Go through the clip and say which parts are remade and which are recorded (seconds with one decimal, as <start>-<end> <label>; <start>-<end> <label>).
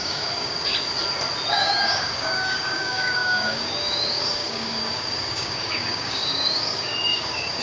0.0-0.7 remade; 0.7-1.5 recorded; 1.5-7.6 remade